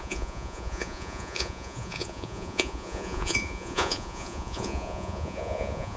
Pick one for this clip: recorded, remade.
remade